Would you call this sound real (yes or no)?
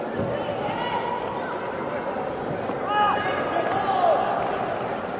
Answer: yes